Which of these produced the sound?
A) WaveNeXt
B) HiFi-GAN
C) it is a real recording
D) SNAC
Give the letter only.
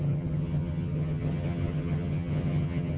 B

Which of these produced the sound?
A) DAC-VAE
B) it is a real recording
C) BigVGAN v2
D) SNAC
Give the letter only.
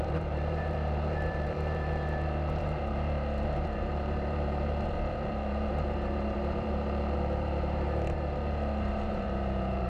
C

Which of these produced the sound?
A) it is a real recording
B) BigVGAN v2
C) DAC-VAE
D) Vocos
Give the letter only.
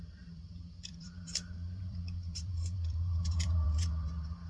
B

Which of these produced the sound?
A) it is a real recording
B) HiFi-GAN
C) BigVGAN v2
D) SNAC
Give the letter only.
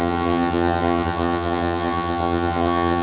B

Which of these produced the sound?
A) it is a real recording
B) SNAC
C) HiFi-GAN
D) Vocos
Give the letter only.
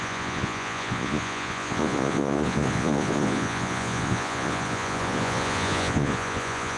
D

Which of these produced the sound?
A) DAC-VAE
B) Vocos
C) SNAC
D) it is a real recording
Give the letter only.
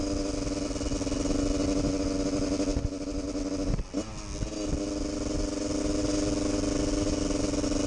D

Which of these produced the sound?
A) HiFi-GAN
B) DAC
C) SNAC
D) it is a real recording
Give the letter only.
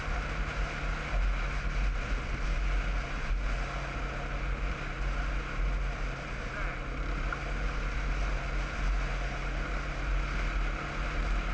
D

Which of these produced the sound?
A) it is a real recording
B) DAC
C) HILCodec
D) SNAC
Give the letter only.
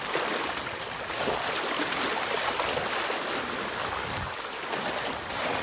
A